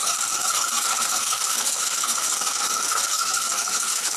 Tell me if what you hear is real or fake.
fake